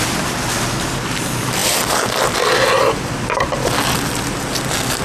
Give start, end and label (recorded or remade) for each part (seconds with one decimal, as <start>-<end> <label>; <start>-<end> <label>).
0.0-5.0 recorded